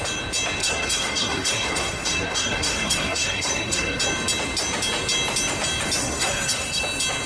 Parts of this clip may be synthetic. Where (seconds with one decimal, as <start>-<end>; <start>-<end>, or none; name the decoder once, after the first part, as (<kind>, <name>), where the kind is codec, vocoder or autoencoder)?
0.6-4.0 (codec, SNAC); 6.0-6.8

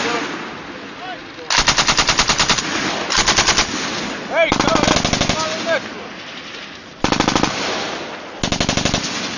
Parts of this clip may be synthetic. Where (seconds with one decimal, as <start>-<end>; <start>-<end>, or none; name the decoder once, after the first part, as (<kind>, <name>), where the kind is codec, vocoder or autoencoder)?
none